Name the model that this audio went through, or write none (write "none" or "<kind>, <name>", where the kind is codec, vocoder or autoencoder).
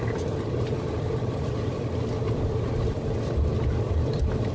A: none